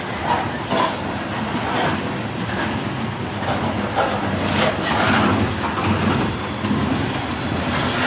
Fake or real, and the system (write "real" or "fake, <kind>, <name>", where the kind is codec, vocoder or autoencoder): real